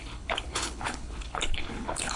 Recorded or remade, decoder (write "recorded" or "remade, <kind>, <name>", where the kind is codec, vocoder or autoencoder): remade, codec, HILCodec